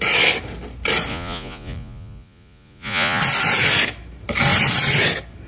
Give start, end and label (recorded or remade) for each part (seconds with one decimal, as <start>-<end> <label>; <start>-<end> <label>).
0.0-1.1 recorded; 1.1-3.2 remade; 3.2-5.5 recorded

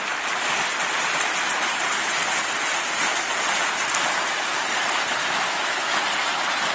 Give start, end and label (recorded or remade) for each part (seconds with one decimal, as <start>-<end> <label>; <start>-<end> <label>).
0.0-5.2 recorded; 5.2-6.0 remade; 6.0-6.7 recorded